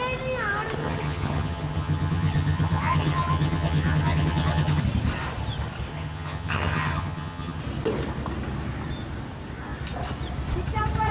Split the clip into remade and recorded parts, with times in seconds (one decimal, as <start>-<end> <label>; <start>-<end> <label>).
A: 0.0-0.8 recorded; 0.8-4.8 remade; 4.8-5.9 recorded; 5.9-7.6 remade; 7.6-11.1 recorded